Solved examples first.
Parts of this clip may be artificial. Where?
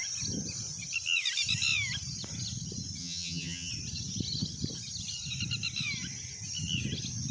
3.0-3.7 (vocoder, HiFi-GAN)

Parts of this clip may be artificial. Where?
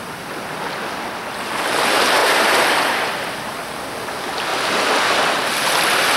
2.2-3.1 (vocoder, BigVGAN v2)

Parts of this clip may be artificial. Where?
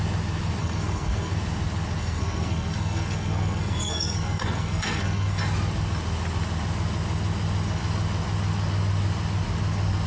0.6-1.3 (codec, SNAC); 2.0-5.4